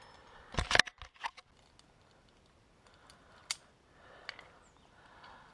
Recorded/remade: recorded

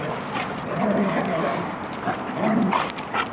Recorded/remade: recorded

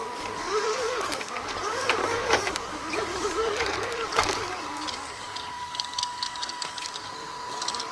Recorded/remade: remade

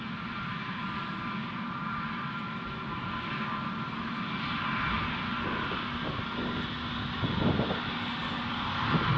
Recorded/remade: recorded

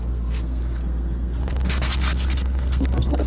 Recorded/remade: remade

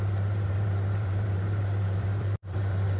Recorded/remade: remade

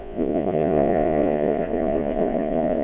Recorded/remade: remade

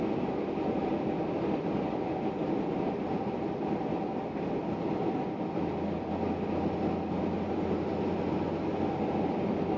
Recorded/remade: recorded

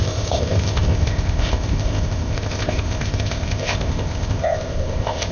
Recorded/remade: remade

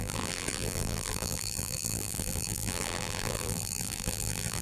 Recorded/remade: remade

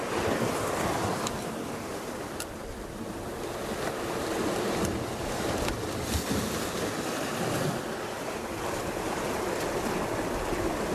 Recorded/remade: recorded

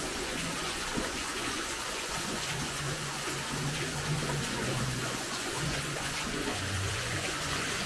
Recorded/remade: remade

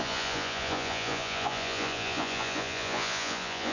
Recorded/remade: remade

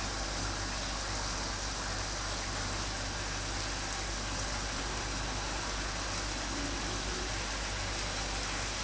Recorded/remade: recorded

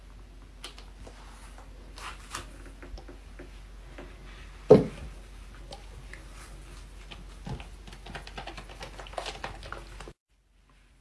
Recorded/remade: recorded